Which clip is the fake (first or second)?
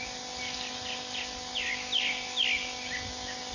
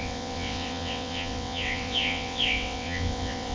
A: second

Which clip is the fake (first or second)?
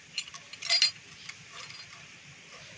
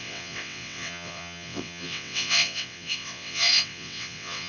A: second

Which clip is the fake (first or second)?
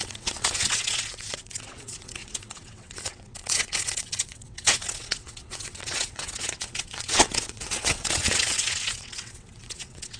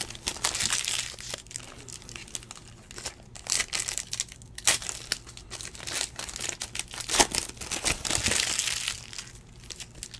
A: first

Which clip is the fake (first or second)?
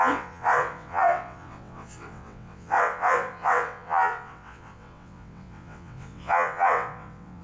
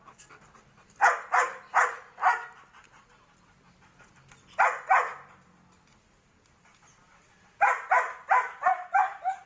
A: first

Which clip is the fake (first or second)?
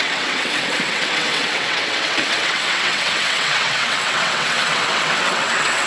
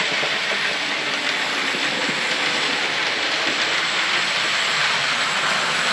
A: first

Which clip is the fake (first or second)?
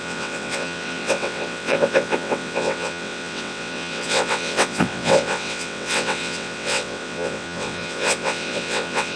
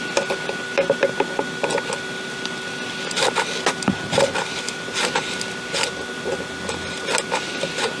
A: first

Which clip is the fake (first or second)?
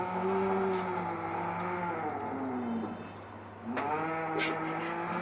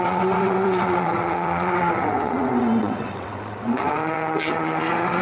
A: second